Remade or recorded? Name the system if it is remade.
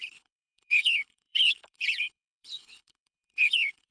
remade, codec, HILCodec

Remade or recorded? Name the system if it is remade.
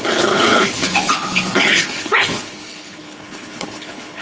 remade, codec, HILCodec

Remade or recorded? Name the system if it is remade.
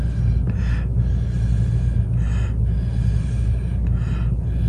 recorded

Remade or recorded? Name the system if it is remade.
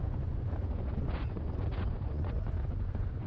remade, vocoder, Vocos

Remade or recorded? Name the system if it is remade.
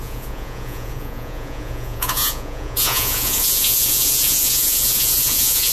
remade, vocoder, Vocos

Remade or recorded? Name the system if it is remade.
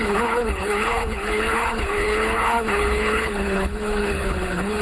remade, codec, HILCodec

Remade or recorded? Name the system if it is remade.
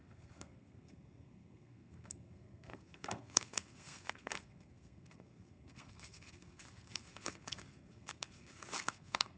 remade, codec, SNAC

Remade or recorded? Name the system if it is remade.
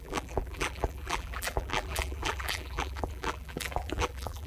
remade, vocoder, BigVGAN v2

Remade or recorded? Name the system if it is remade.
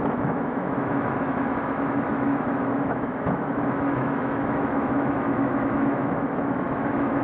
remade, autoencoder, DAC-VAE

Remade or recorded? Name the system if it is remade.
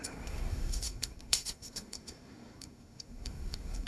remade, codec, SNAC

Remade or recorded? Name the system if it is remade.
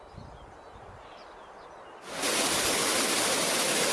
recorded